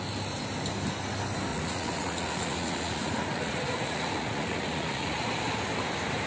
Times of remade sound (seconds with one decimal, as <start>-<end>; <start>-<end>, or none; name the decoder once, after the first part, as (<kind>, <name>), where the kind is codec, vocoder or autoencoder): 1.5-5.3 (vocoder, Vocos)